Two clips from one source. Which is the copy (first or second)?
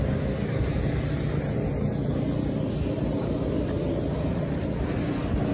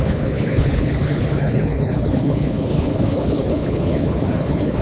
second